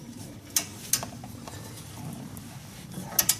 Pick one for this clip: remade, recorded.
recorded